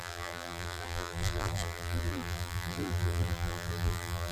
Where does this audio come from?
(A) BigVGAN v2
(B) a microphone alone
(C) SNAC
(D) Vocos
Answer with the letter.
A